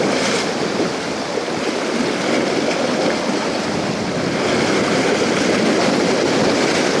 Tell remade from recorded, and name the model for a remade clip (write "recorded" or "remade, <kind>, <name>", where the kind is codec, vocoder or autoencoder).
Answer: recorded